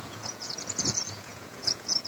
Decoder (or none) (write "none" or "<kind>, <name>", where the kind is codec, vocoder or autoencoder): vocoder, Vocos